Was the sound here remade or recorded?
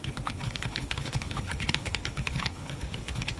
remade